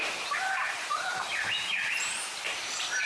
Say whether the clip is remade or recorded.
remade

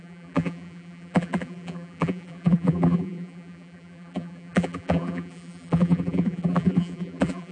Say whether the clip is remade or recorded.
remade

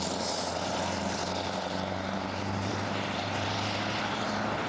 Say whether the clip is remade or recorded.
remade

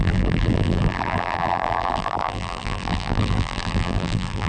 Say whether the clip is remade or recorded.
remade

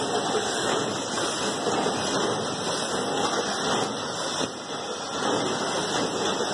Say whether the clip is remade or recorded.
recorded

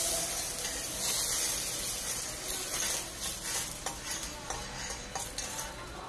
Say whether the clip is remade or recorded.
recorded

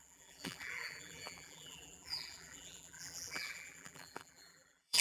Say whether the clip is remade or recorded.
remade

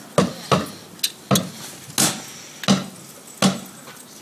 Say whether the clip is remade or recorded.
recorded